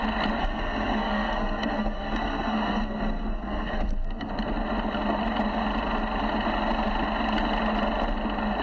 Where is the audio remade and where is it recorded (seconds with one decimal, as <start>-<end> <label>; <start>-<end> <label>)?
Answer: 0.0-0.4 recorded; 0.4-4.3 remade; 4.3-8.6 recorded